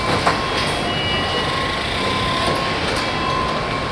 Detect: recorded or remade recorded